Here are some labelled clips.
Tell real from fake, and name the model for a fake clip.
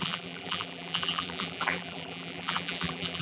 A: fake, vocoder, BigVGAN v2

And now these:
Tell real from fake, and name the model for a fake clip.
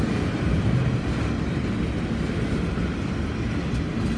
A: real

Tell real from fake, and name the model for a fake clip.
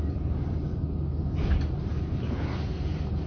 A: real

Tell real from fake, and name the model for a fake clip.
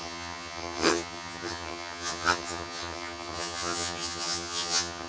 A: fake, vocoder, HiFi-GAN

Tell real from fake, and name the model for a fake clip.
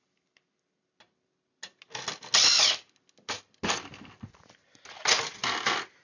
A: real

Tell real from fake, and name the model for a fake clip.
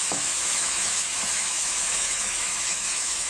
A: fake, autoencoder, DAC-VAE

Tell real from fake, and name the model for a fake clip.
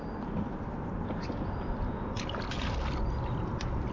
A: real